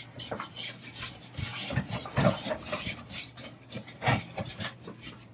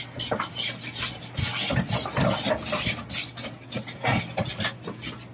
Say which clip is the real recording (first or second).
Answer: second